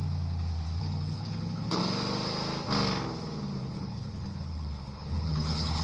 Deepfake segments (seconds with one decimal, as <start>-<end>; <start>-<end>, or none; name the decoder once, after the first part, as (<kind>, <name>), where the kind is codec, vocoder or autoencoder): 0.8-1.8 (codec, HILCodec); 3.6-5.8